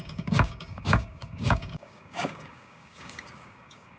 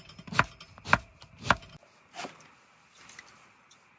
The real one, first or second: second